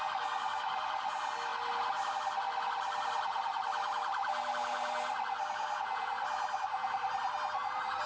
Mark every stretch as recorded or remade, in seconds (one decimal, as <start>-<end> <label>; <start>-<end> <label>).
0.0-8.1 recorded